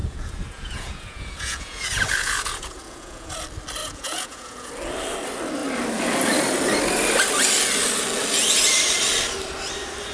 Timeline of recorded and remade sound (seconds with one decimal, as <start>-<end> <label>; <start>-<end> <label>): 0.0-3.3 remade; 3.3-3.8 recorded; 3.8-4.7 remade; 4.7-10.1 recorded